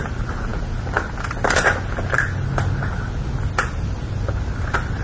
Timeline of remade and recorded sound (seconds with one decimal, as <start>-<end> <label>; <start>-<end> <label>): 0.0-5.0 recorded